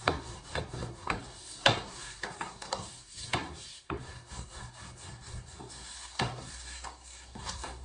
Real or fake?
fake